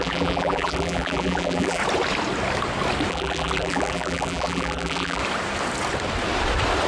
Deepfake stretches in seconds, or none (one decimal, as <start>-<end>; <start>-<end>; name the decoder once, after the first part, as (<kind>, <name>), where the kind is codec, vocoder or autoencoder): 0.0-1.8 (vocoder, BigVGAN v2); 3.1-5.2